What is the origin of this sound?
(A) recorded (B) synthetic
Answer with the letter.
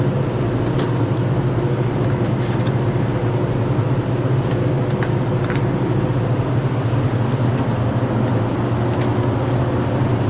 A